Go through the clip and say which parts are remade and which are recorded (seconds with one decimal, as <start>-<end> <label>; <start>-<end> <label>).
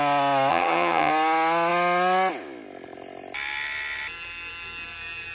0.0-0.5 recorded; 0.5-1.1 remade; 1.1-5.3 recorded